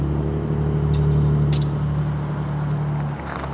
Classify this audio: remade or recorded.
recorded